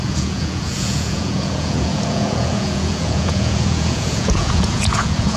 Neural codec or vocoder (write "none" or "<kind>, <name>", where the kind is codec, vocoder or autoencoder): vocoder, Vocos